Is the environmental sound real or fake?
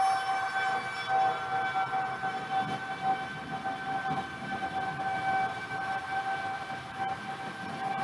real